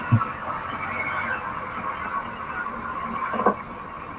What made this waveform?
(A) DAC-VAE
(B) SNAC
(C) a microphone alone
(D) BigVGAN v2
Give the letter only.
C